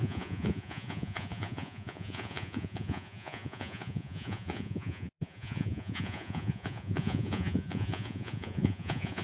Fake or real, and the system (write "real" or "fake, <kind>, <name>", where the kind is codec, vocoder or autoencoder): fake, vocoder, Vocos